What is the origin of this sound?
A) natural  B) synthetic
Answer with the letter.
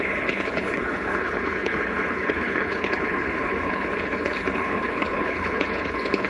B